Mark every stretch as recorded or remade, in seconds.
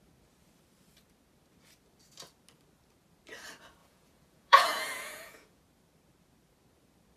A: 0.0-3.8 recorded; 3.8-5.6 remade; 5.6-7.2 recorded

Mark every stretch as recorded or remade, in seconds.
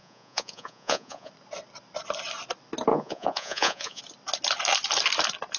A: 0.0-1.3 remade; 1.3-2.9 recorded; 2.9-4.0 remade; 4.0-5.6 recorded